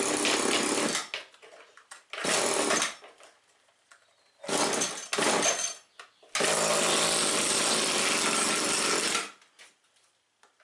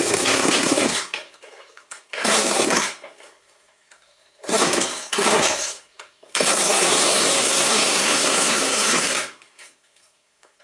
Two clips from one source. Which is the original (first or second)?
first